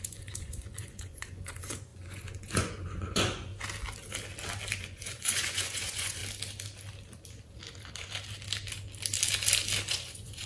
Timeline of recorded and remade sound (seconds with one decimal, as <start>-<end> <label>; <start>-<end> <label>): 0.0-3.5 remade; 3.5-4.8 recorded; 4.8-6.2 remade; 6.2-9.9 recorded; 9.9-10.5 remade